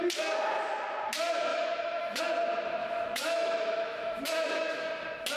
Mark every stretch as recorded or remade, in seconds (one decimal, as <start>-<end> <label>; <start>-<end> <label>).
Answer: 0.0-1.5 recorded; 1.5-2.2 remade; 2.2-2.8 recorded; 2.8-4.9 remade; 4.9-5.4 recorded